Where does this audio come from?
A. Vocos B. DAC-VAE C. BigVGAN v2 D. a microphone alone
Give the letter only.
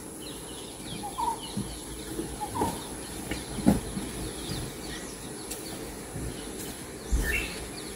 D